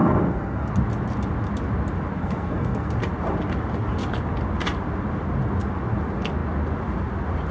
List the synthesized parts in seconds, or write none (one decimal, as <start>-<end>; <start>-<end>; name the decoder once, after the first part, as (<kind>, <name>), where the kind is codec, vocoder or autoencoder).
0.0-0.7 (codec, SNAC); 2.2-2.9